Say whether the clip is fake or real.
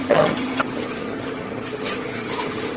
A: fake